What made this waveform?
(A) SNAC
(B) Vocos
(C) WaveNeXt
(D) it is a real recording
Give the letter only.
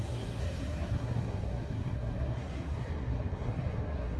A